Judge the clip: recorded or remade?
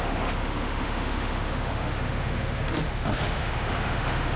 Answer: remade